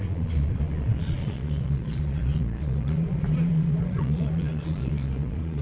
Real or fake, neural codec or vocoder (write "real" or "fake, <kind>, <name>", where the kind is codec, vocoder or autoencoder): fake, vocoder, Vocos